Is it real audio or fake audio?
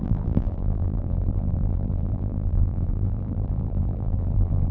fake